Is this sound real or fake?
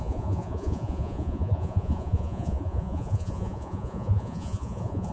fake